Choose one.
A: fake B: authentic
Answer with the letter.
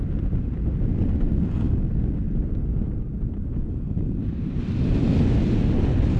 B